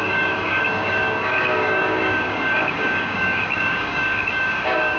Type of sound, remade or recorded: remade